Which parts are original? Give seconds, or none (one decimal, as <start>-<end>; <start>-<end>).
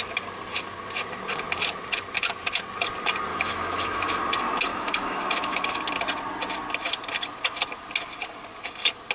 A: 0.0-3.3; 4.2-4.7; 5.8-9.1